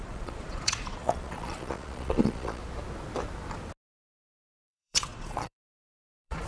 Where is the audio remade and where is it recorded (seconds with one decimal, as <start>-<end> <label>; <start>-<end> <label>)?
0.0-2.6 remade; 2.6-4.1 recorded; 4.1-6.5 remade